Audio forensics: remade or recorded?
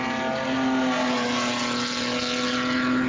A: recorded